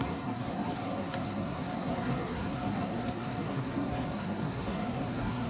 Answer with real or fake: fake